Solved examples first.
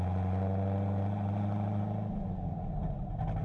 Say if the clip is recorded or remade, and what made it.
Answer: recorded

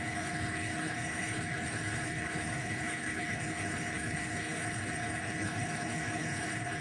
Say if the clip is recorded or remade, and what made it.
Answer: remade, codec, HILCodec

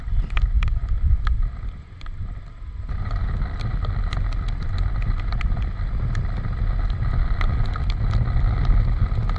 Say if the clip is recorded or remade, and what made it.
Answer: recorded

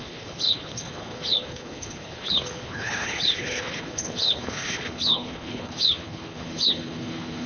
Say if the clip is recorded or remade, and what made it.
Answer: remade, codec, HILCodec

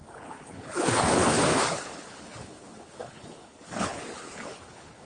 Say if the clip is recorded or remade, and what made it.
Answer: remade, codec, HILCodec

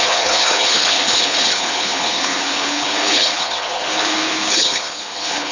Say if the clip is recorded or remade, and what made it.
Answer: remade, codec, HILCodec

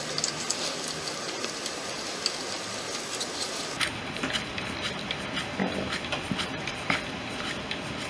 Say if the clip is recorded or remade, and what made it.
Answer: recorded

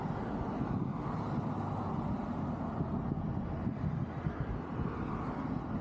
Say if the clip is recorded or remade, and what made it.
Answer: recorded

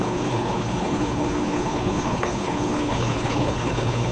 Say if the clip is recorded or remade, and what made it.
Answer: remade, codec, HILCodec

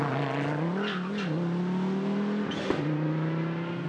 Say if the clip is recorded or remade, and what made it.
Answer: recorded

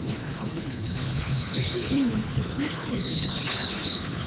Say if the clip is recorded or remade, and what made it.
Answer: remade, codec, HILCodec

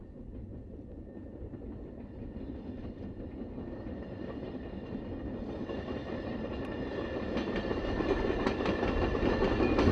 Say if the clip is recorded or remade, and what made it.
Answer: recorded